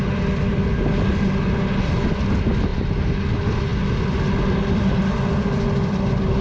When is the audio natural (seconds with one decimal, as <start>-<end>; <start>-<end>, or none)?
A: 0.0-6.4